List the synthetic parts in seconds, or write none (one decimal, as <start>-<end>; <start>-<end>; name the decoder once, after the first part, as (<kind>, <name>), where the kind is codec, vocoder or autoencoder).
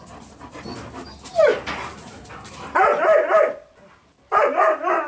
1.5-4.6 (vocoder, BigVGAN v2)